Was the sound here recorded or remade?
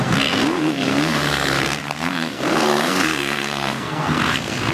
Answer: remade